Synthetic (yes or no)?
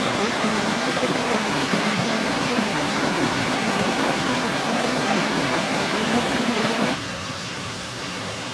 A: yes